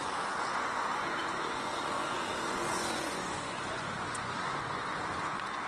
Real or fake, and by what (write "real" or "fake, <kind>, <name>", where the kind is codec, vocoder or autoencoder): fake, vocoder, Vocos